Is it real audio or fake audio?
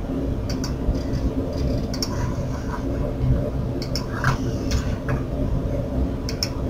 real